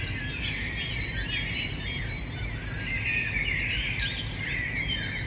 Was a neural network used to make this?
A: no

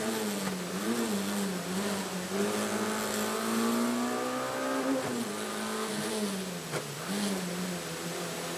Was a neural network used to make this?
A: no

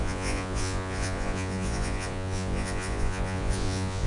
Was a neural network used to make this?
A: yes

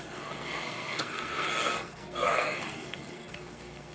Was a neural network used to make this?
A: yes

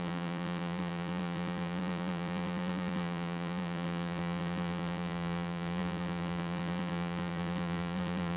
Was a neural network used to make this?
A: yes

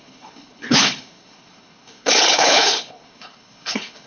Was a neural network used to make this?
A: yes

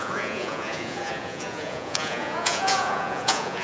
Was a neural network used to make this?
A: yes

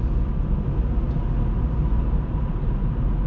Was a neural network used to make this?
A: no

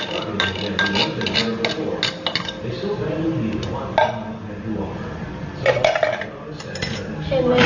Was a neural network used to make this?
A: no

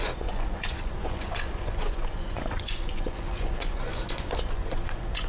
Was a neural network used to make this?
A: yes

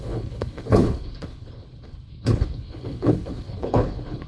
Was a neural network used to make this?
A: yes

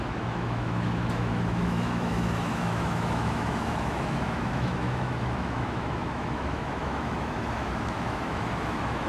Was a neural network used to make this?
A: yes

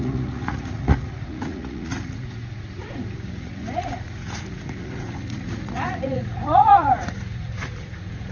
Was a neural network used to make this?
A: yes